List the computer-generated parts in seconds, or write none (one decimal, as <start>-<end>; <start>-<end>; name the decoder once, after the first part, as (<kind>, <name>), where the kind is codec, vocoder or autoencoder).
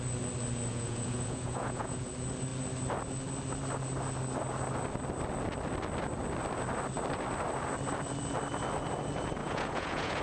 0.7-2.1 (vocoder, Vocos); 9.4-10.2